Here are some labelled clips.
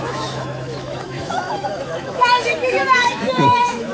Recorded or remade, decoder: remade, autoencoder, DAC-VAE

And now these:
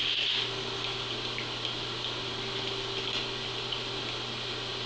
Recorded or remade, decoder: recorded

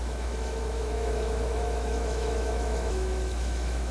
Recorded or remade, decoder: remade, autoencoder, DAC-VAE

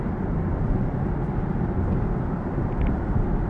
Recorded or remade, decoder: recorded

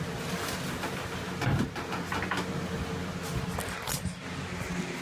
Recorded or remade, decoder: recorded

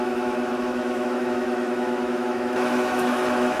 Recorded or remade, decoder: remade, autoencoder, DAC-VAE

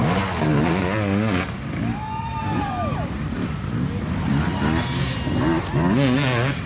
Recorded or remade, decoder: recorded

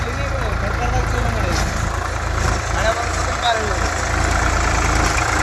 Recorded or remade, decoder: recorded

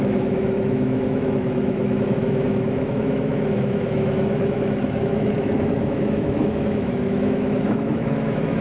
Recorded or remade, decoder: remade, autoencoder, DAC-VAE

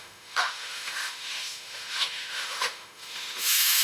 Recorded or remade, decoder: remade, autoencoder, DAC-VAE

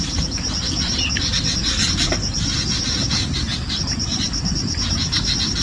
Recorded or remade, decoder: recorded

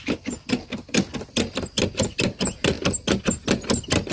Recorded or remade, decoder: recorded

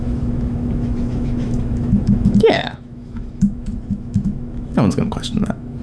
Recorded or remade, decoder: remade, autoencoder, DAC-VAE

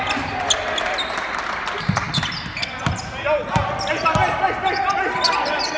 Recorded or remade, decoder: recorded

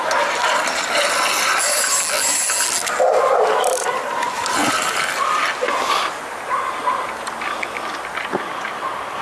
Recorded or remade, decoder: recorded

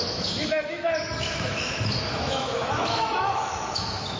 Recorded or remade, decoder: remade, autoencoder, DAC-VAE